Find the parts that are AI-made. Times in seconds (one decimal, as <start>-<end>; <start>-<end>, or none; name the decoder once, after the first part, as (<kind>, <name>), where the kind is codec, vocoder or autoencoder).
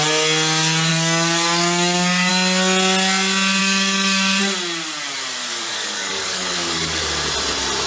0.9-2.3 (codec, DAC); 3.6-4.4; 5.4-7.0